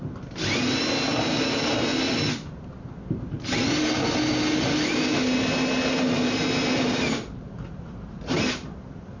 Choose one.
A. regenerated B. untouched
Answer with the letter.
B